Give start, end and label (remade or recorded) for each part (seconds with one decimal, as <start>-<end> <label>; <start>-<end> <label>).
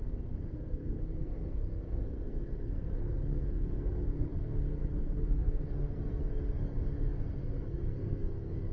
0.0-8.7 remade